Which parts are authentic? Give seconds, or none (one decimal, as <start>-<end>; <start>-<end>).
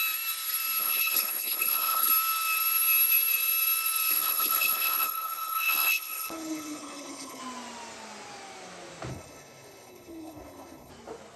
0.0-0.8; 2.1-4.1; 7.4-9.1; 10.9-11.4